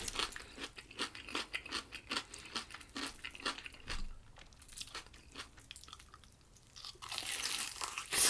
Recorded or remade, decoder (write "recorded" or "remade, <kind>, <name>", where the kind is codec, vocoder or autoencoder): recorded